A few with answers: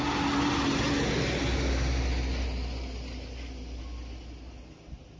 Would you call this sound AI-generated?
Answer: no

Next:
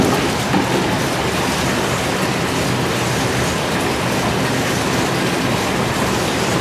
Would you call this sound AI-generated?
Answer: no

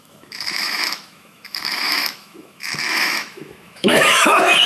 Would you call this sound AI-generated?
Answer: yes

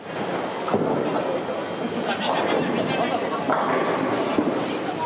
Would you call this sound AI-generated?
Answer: no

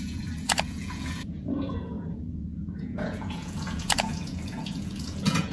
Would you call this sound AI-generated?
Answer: yes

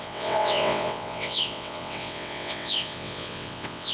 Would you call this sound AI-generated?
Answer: yes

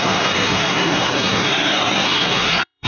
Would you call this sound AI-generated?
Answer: yes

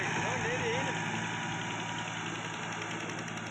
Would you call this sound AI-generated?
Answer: no